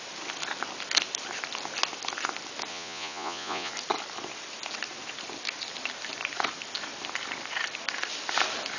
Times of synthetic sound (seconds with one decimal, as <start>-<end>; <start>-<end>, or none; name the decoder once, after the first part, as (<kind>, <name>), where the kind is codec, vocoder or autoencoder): 2.7-3.7 (vocoder, Vocos)